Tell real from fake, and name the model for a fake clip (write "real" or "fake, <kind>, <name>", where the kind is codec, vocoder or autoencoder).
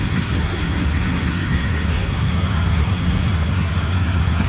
fake, codec, SNAC